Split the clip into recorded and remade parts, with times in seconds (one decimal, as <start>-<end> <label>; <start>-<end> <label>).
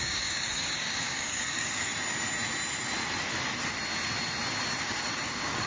0.0-1.9 remade; 1.9-5.3 recorded; 5.3-5.7 remade